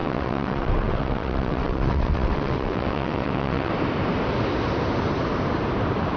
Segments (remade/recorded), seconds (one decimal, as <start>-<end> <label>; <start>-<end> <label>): 0.0-3.7 remade; 3.7-6.2 recorded